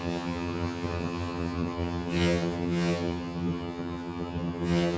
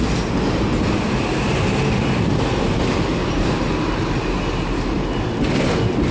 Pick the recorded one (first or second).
second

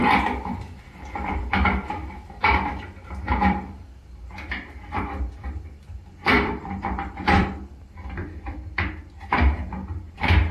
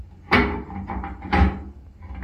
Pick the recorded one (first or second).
second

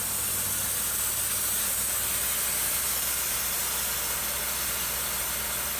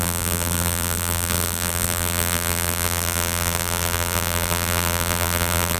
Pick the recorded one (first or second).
first